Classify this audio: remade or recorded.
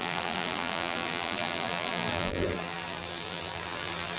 remade